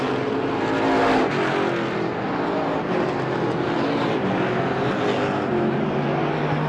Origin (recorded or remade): recorded